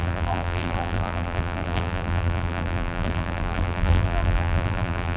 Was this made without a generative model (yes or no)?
no